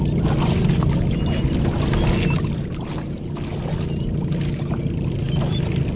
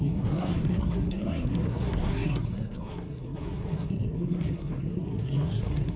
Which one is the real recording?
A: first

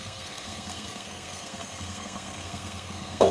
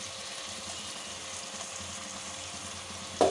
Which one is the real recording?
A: second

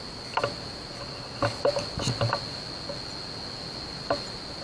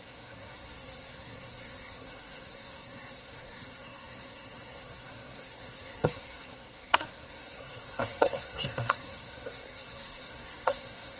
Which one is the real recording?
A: first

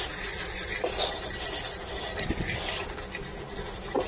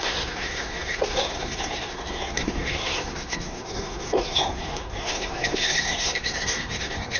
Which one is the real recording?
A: first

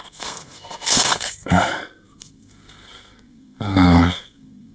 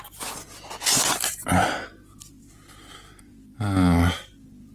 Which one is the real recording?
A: second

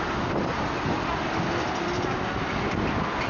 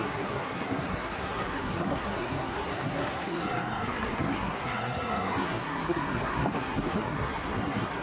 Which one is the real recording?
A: first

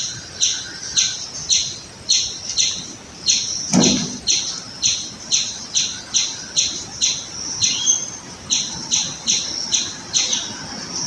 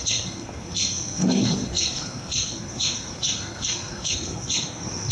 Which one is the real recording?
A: first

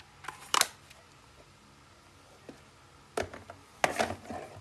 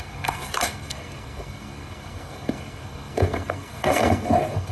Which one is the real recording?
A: first